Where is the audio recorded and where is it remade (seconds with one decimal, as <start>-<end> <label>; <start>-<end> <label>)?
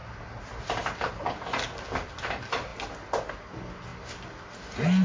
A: 0.0-5.0 recorded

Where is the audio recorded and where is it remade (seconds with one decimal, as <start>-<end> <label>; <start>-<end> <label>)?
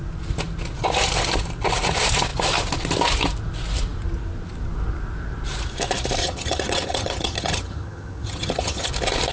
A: 0.0-6.2 recorded; 6.2-8.9 remade; 8.9-9.3 recorded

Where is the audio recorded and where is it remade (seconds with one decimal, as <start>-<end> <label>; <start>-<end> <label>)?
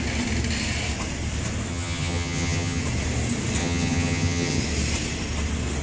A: 0.0-1.7 recorded; 1.7-2.8 remade; 2.8-3.6 recorded; 3.6-4.6 remade; 4.6-5.8 recorded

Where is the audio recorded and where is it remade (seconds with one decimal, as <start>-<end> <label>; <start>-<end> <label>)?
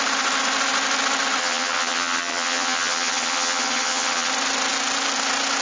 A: 0.0-1.4 recorded; 1.4-4.3 remade; 4.3-5.6 recorded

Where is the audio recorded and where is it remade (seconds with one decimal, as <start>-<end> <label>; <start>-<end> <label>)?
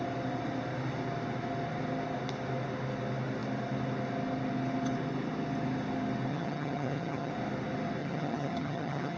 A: 0.0-6.3 recorded; 6.3-7.3 remade; 7.3-8.0 recorded; 8.0-9.2 remade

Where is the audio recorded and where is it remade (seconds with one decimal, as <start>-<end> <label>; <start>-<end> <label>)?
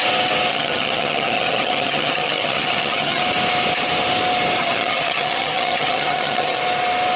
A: 0.0-0.5 recorded; 0.5-3.2 remade; 3.2-4.6 recorded; 4.6-6.6 remade; 6.6-7.2 recorded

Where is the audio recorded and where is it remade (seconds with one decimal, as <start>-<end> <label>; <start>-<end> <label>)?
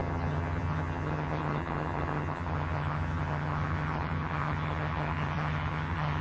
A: 0.0-6.2 remade